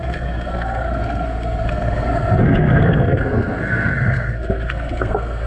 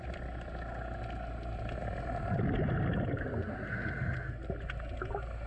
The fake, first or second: first